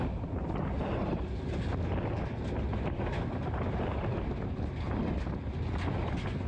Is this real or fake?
real